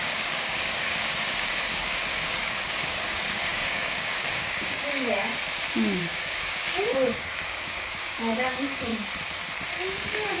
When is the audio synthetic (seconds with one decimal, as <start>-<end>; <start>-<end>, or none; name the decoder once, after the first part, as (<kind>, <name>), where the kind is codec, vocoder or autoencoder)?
0.0-5.3 (codec, DAC); 6.0-8.9; 9.7-10.4